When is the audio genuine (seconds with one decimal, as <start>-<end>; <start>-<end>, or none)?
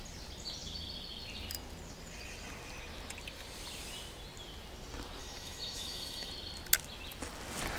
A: 0.0-5.2; 6.3-7.8